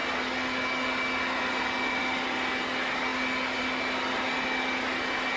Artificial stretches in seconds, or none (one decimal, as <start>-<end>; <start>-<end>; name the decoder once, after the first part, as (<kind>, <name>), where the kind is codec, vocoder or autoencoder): none